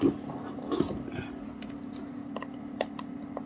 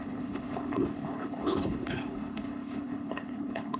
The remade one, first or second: second